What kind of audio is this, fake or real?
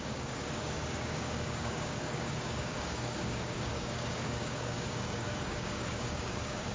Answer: fake